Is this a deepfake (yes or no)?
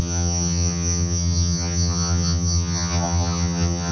yes